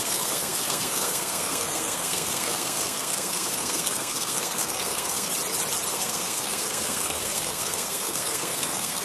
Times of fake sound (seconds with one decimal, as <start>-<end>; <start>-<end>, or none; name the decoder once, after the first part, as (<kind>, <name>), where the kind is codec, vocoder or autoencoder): 0.0-5.3 (codec, SNAC); 5.9-9.0